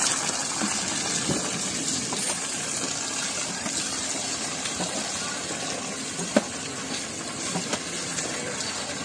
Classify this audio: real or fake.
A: real